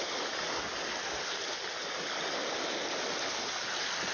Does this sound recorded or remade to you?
recorded